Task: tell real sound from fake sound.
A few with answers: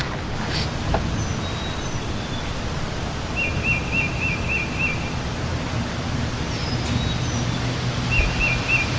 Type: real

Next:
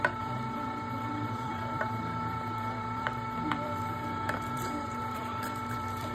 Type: fake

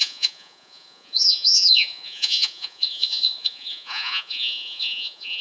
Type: fake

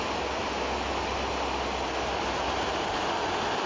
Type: real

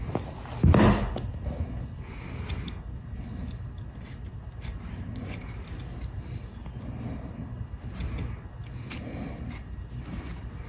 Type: real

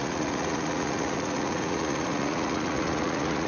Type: fake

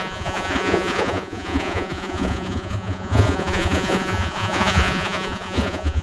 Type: fake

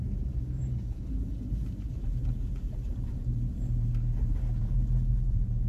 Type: fake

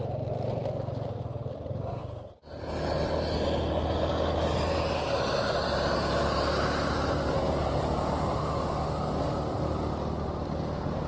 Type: real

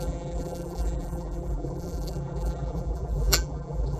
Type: fake